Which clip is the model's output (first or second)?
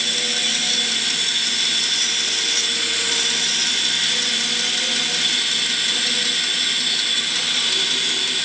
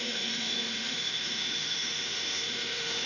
second